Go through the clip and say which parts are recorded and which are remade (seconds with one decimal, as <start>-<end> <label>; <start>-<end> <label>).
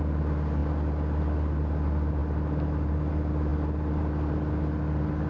0.0-5.3 recorded